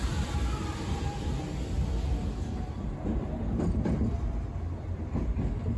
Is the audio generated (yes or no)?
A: no